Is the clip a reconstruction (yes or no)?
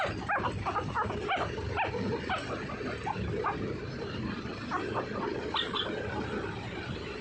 no